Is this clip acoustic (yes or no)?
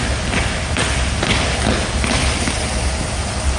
yes